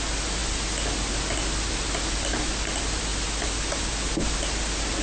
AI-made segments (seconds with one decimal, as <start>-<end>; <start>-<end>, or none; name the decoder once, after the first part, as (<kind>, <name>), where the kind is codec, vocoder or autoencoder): none